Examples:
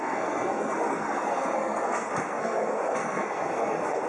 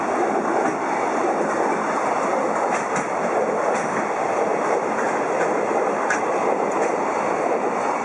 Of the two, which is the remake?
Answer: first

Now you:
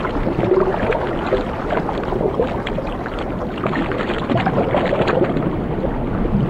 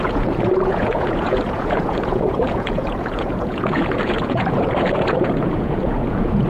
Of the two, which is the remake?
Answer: second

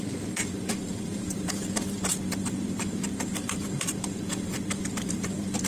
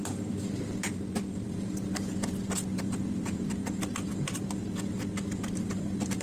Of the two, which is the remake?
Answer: first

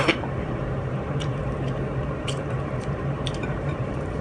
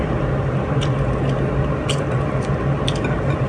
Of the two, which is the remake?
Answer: first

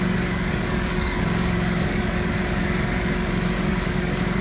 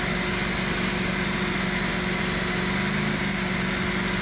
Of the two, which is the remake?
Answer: first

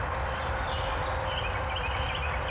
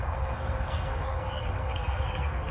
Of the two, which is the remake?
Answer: second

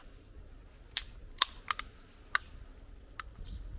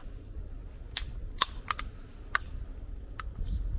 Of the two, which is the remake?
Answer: second